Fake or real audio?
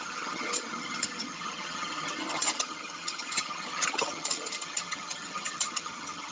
fake